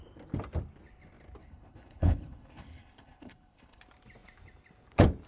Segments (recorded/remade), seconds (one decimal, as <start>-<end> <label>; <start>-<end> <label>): 0.0-1.4 recorded; 1.4-3.8 remade; 3.8-5.3 recorded